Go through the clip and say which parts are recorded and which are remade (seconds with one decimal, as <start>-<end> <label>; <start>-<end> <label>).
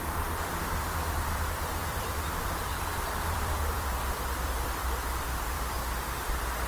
0.0-6.7 remade